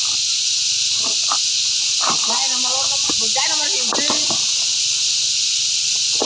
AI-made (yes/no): no